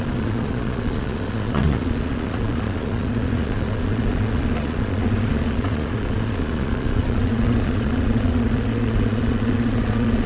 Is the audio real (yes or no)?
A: no